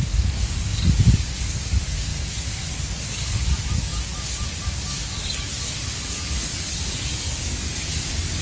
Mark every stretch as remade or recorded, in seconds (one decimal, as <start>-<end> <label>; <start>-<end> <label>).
0.0-8.4 remade